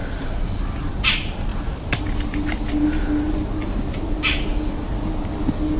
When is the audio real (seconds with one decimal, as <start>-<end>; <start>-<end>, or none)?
0.9-1.5; 2.7-4.5; 5.1-5.8